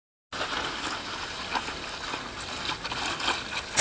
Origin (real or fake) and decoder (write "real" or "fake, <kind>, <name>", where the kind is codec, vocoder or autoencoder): real